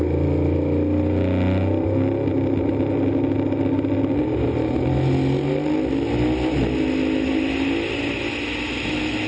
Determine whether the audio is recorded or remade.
recorded